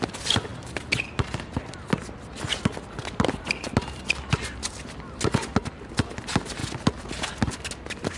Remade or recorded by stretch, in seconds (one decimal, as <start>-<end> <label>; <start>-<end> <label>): 0.0-8.2 recorded